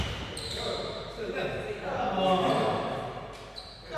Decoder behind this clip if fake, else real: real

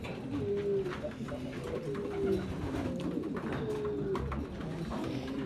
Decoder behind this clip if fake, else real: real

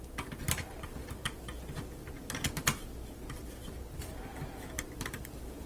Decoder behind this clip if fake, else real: real